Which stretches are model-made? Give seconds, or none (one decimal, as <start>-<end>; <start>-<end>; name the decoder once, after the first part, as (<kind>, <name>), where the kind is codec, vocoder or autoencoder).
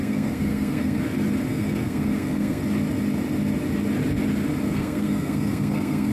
0.0-1.0 (codec, SNAC); 1.5-2.6; 4.7-6.1